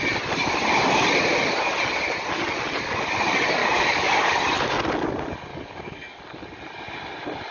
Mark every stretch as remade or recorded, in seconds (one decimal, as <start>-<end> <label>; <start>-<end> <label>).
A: 0.0-3.6 recorded; 3.6-4.4 remade; 4.4-5.5 recorded; 5.5-6.2 remade; 6.2-7.5 recorded